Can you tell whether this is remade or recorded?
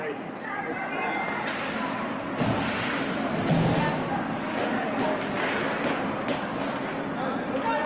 recorded